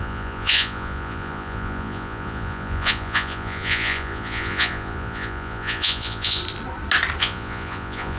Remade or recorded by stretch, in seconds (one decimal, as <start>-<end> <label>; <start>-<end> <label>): 0.0-6.4 remade; 6.4-7.2 recorded; 7.2-8.2 remade